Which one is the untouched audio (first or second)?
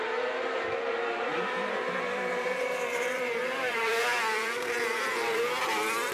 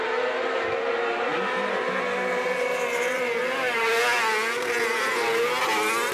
second